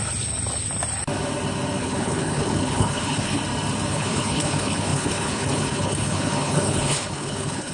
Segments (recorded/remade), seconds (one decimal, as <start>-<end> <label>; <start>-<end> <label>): 0.0-1.8 recorded; 1.8-3.4 remade; 3.4-3.9 recorded; 3.9-7.7 remade